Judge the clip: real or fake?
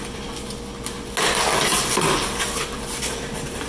real